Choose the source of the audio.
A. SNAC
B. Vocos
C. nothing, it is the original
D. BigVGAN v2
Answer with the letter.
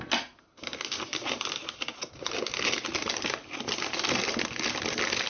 C